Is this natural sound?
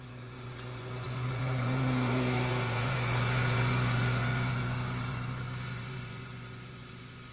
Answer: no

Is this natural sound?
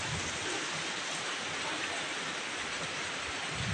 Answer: yes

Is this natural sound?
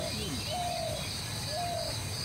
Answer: yes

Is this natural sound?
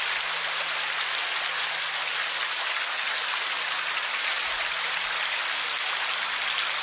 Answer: yes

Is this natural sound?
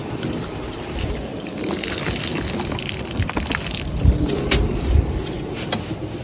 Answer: no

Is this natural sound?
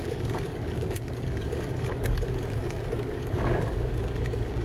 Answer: no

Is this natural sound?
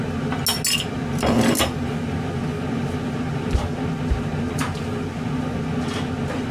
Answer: yes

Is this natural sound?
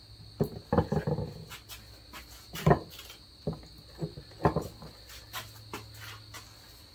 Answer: yes